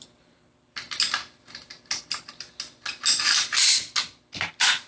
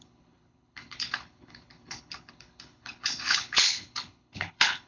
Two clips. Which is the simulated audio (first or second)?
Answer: second